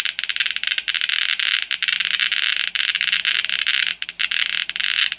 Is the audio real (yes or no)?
yes